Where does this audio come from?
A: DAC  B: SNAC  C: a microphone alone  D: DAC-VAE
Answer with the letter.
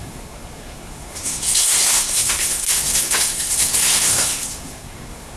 B